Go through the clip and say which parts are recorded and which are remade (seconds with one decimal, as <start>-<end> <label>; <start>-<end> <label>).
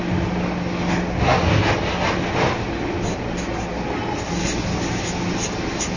0.0-6.0 recorded